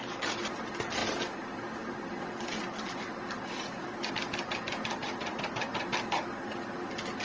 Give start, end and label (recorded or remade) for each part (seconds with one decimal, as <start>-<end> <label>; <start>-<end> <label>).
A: 0.0-7.2 recorded